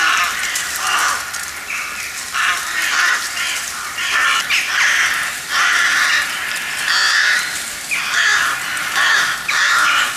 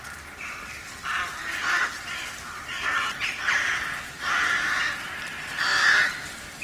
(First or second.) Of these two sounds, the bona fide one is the first